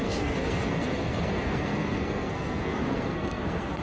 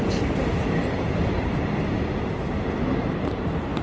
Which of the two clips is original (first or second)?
second